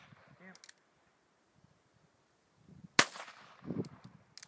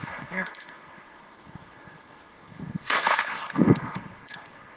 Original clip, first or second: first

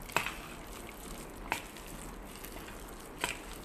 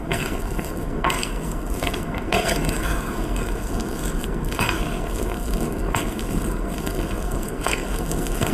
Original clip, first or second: first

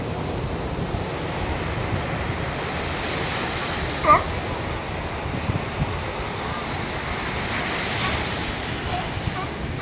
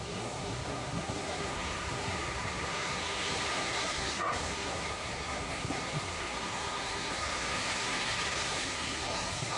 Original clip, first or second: first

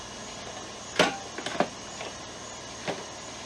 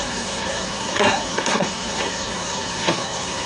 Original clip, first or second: first